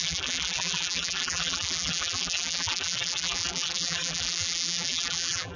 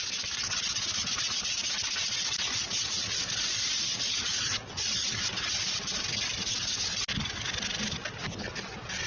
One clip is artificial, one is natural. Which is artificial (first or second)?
first